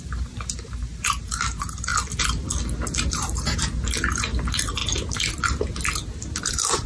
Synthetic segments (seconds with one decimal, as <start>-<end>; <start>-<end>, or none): 0.0-1.9; 3.1-4.8; 6.4-6.9